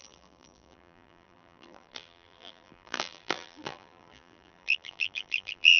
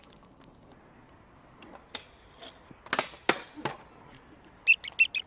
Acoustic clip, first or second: second